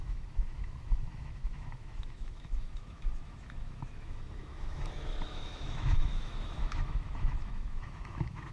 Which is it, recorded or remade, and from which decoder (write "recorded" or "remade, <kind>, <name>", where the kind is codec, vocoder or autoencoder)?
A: remade, autoencoder, DAC-VAE